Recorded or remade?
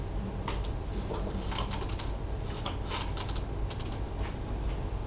recorded